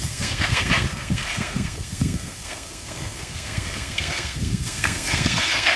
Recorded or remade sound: remade